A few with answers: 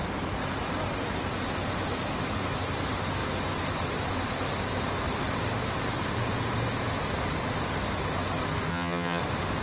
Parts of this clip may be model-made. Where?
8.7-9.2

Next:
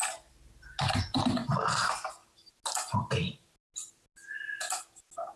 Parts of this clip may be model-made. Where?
none

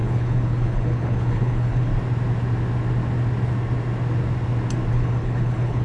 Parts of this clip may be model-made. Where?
0.0-1.9; 4.9-5.8

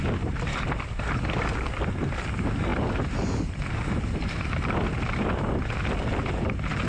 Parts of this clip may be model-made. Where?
none

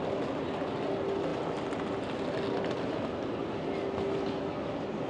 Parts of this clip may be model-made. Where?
none

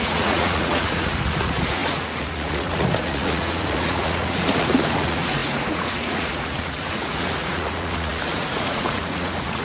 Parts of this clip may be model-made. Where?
0.0-9.6